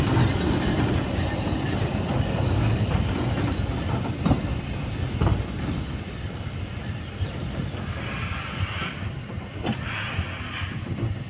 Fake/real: real